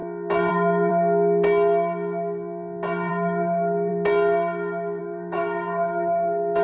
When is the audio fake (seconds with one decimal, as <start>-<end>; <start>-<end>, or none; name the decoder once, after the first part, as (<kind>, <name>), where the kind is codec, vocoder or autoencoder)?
0.5-0.9 (codec, DAC); 3.1-3.9; 5.0-6.6